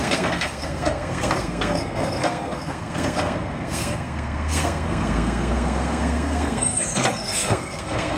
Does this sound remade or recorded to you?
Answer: remade